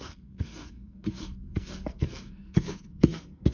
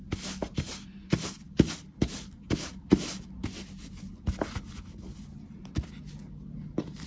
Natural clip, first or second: second